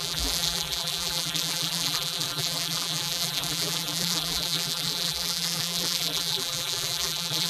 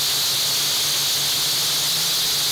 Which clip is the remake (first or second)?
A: first